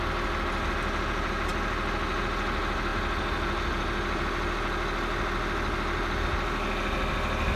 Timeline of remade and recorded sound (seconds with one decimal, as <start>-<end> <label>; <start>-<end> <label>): 0.0-7.6 recorded